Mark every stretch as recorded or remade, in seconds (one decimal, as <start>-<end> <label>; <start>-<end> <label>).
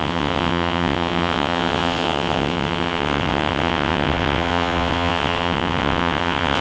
0.0-6.6 remade